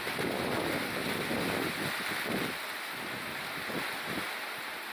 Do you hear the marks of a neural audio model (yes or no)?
no